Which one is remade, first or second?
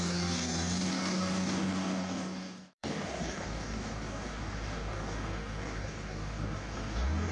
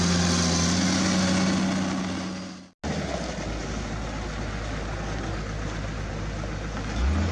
first